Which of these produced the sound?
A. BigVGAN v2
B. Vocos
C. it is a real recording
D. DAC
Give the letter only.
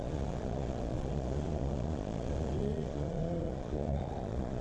B